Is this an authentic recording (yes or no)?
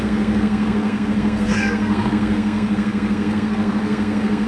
no